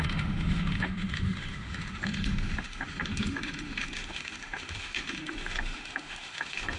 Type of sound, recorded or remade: remade